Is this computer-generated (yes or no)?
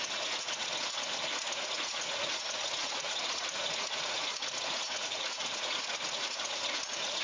yes